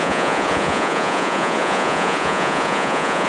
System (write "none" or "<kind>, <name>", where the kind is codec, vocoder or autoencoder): vocoder, Vocos